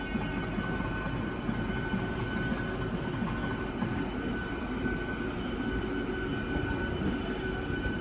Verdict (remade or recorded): recorded